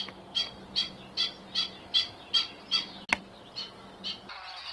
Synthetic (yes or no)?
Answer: no